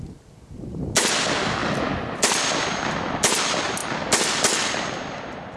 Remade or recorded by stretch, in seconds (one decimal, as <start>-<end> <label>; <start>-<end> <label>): 0.0-5.6 recorded